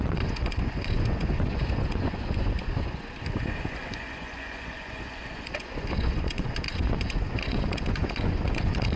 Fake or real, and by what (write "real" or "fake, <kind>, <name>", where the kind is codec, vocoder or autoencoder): fake, vocoder, Vocos